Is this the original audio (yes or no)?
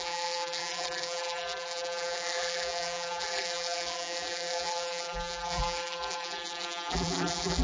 no